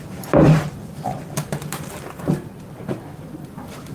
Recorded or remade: remade